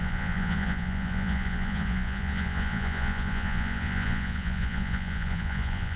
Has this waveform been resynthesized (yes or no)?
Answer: yes